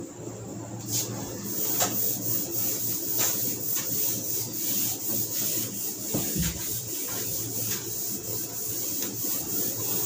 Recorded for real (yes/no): yes